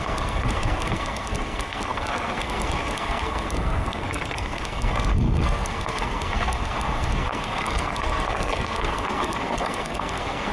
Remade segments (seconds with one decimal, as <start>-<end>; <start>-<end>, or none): 0.0-10.5